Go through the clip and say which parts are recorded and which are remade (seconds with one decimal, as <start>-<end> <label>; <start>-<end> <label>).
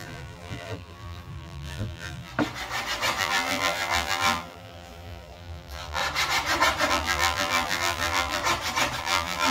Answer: 0.0-2.3 remade; 2.3-3.2 recorded; 3.2-6.0 remade; 6.0-6.9 recorded; 6.9-8.4 remade; 8.4-9.0 recorded; 9.0-9.5 remade